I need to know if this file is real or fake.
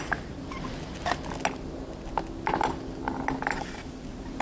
real